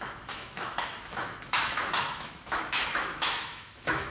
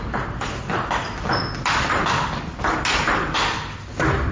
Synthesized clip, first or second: first